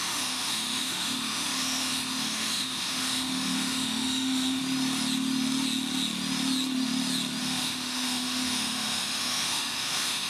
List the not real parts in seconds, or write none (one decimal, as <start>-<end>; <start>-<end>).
0.0-4.6; 7.4-10.3